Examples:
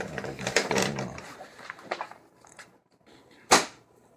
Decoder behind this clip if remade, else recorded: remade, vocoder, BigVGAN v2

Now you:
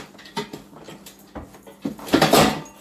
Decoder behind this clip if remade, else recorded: recorded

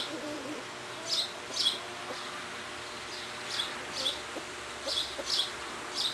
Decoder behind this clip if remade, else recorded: recorded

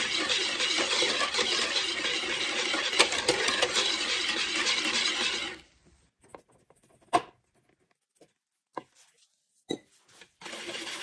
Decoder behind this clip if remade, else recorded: recorded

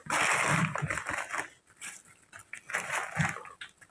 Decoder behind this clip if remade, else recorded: recorded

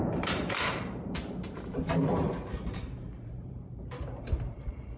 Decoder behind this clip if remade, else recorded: remade, vocoder, BigVGAN v2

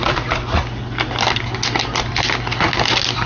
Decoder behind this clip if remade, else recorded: recorded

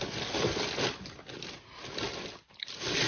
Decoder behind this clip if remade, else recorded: recorded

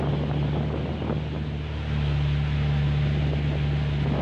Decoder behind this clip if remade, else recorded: recorded